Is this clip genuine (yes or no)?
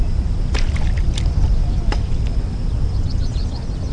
yes